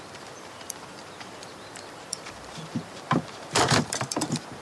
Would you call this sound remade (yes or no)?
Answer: yes